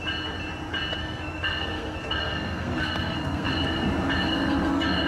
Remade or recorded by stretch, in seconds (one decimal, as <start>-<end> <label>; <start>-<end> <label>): 0.0-1.0 recorded; 1.0-3.5 remade; 3.5-4.3 recorded; 4.3-5.1 remade